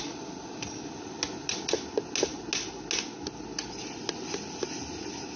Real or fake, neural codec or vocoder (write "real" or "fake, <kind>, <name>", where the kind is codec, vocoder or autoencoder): real